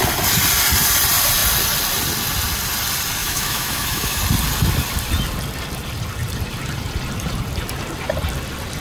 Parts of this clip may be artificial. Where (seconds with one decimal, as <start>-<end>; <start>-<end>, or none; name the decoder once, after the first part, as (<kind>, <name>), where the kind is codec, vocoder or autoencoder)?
3.2-4.2 (autoencoder, DAC-VAE)

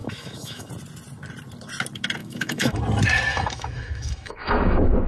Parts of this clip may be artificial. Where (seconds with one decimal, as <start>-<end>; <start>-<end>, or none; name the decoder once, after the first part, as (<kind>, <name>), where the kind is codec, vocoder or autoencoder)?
0.0-0.7 (autoencoder, DAC-VAE); 2.2-2.8; 3.3-5.1